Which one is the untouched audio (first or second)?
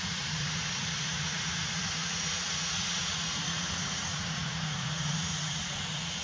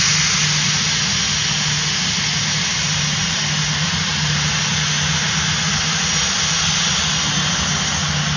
second